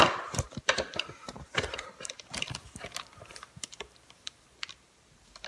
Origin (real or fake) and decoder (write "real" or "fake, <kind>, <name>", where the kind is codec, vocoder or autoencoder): fake, vocoder, BigVGAN v2